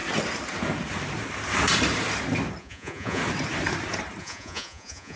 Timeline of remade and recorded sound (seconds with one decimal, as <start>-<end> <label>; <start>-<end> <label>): 0.0-2.6 recorded; 2.6-3.2 remade; 3.2-4.2 recorded; 4.2-5.2 remade